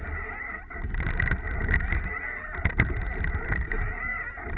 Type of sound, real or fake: real